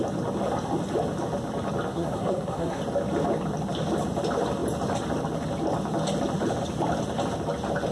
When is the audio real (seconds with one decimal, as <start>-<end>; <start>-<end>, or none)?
0.0-1.9; 2.8-7.9